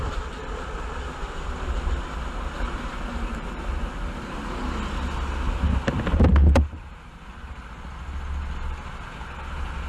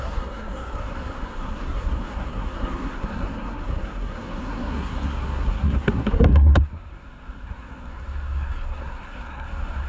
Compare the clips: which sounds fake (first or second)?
second